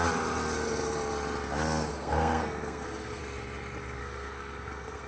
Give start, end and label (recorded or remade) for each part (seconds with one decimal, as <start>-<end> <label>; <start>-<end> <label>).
0.0-1.9 recorded; 1.9-3.2 remade; 3.2-4.0 recorded; 4.0-5.1 remade